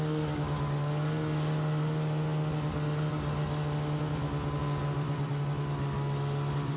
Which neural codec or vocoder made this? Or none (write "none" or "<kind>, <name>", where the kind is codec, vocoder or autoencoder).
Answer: none